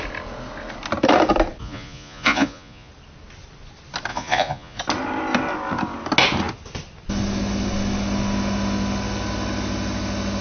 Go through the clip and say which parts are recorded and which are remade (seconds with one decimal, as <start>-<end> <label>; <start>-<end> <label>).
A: 0.0-1.6 recorded; 1.6-2.9 remade; 2.9-4.1 recorded; 4.1-4.8 remade; 4.8-10.4 recorded